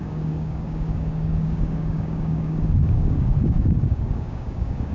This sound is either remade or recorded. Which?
remade